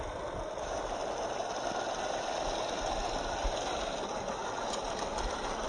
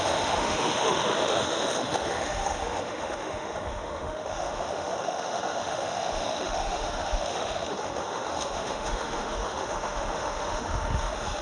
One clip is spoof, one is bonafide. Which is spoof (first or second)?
second